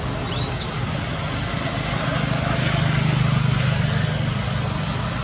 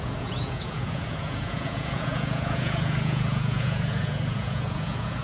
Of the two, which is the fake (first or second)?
second